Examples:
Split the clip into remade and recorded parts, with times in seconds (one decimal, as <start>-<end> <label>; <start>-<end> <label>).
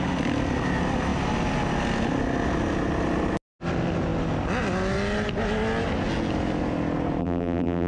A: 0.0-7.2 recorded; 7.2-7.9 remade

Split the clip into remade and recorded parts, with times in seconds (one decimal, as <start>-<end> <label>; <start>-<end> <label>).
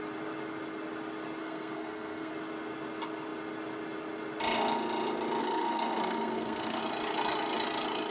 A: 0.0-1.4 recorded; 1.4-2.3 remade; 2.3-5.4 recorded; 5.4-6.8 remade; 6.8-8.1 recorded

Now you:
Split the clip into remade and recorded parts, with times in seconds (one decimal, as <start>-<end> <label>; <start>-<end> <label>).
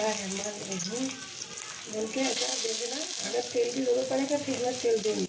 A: 0.0-5.3 recorded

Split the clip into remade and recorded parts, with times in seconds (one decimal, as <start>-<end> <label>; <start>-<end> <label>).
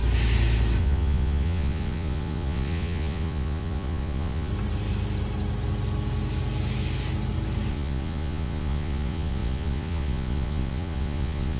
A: 0.0-0.8 recorded; 0.8-4.5 remade; 4.5-7.7 recorded; 7.7-11.6 remade